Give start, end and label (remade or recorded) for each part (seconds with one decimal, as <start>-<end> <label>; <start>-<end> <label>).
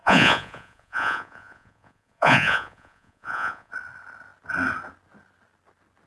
0.0-3.7 remade; 3.7-6.1 recorded